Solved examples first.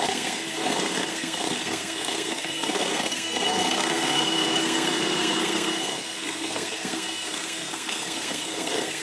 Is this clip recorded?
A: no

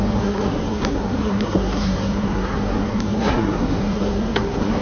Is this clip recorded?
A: no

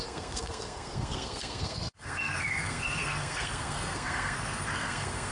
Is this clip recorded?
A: no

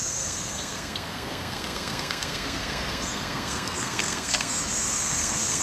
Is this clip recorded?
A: no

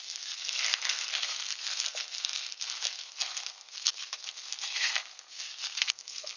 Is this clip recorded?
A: no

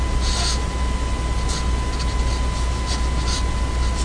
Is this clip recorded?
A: yes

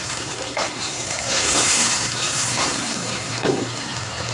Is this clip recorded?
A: no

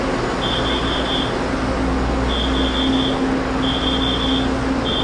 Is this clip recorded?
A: yes